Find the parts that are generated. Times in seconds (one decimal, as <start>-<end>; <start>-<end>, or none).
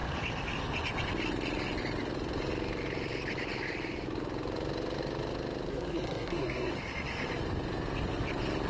5.7-6.7